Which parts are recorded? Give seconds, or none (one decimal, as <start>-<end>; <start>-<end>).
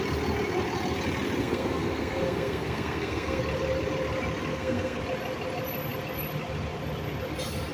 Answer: 0.0-1.4; 3.4-4.5; 5.0-7.7